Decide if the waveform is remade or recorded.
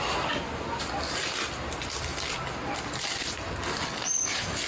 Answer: recorded